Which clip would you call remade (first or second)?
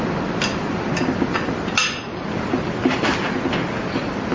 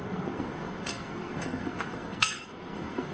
second